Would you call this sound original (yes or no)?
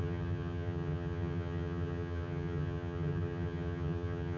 no